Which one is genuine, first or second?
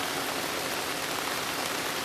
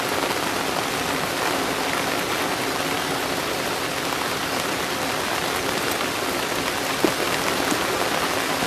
second